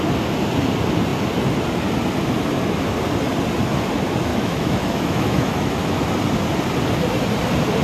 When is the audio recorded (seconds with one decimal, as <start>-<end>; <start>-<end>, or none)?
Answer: 0.0-4.3; 6.0-7.8